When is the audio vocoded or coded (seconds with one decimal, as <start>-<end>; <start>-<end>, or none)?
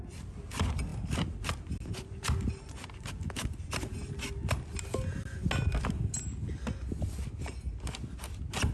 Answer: none